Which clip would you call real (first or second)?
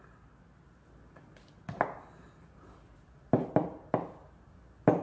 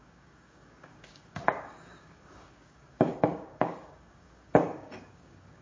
first